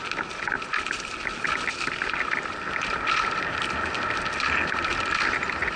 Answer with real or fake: real